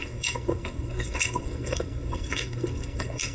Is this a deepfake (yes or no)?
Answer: yes